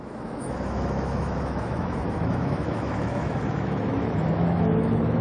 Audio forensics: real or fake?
fake